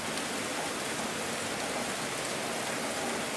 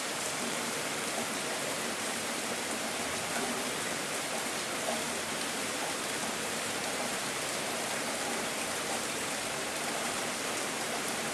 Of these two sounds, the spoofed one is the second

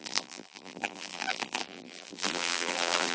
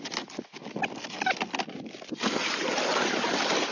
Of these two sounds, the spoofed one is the first